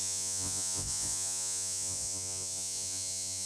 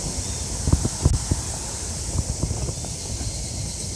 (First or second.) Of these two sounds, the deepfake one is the first